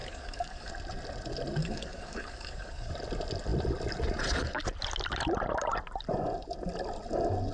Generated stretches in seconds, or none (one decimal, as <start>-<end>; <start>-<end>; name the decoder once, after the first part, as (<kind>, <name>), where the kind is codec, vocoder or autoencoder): 0.0-0.7 (codec, DAC); 1.6-2.9